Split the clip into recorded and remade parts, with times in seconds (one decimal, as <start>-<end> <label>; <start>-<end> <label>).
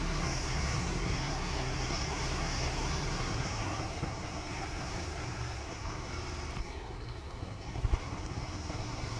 0.0-6.1 remade; 6.1-6.6 recorded; 6.6-9.2 remade